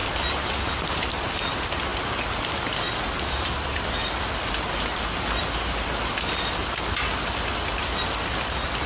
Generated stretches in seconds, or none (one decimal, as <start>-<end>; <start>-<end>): 1.9-4.5; 7.8-8.9